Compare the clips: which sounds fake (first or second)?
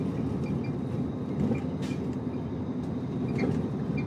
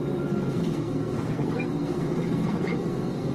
second